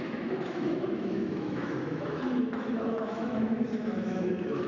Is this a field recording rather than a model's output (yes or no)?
no